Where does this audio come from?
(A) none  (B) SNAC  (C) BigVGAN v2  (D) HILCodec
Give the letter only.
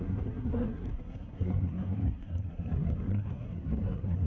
B